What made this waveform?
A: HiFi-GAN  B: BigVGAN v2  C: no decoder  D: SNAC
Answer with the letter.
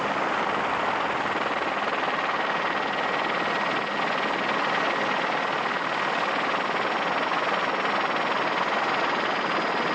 C